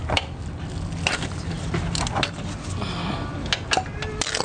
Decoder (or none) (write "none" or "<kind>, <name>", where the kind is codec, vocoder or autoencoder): none